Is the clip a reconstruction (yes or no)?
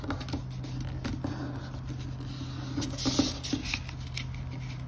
no